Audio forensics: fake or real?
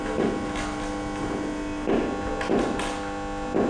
real